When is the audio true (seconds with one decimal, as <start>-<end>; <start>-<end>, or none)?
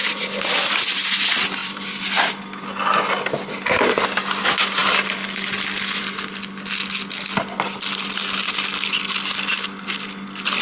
0.7-1.6; 2.3-10.6